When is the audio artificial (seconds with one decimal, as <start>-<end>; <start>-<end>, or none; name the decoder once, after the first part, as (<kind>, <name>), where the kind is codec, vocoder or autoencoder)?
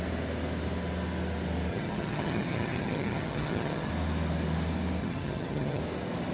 1.7-3.9 (vocoder, HiFi-GAN); 5.0-5.8